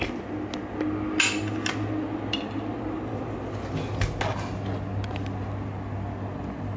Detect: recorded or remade recorded